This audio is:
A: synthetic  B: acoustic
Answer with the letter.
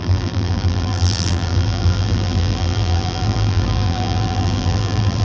A